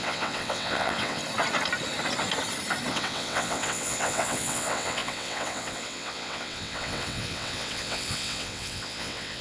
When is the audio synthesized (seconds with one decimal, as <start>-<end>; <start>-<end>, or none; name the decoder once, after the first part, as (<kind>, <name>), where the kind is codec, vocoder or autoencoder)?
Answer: 0.0-1.2 (vocoder, WaveNeXt); 2.9-9.4